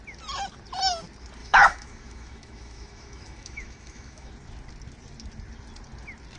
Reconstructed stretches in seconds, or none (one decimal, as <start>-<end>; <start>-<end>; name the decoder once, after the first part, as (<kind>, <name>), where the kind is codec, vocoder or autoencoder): 1.4-4.3 (autoencoder, DAC-VAE)